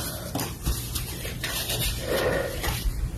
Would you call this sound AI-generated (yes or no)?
no